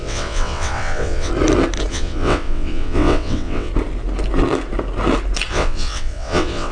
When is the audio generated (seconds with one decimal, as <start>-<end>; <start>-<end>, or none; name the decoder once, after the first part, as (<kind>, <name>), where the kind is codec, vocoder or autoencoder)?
0.0-1.3 (vocoder, WaveNeXt); 1.9-3.7; 5.5-6.7